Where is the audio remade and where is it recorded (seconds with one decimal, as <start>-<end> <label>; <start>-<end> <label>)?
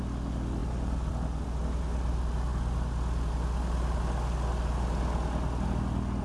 0.0-6.2 recorded